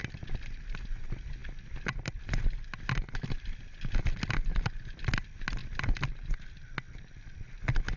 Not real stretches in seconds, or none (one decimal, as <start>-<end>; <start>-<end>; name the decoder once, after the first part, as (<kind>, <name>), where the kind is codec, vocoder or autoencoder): none